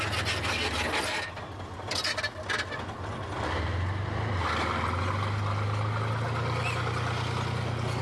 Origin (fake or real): real